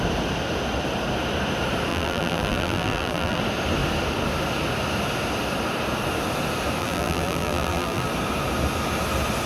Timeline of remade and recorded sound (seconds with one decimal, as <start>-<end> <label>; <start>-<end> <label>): 0.0-1.9 recorded; 1.9-3.4 remade; 3.4-6.8 recorded; 6.8-8.1 remade; 8.1-9.5 recorded